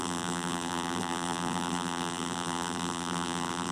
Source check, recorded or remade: remade